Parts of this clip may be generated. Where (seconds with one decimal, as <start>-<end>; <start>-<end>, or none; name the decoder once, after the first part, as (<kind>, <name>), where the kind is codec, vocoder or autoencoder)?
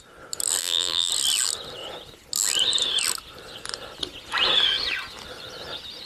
0.6-1.1 (vocoder, BigVGAN v2)